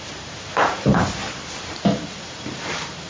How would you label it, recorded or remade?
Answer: remade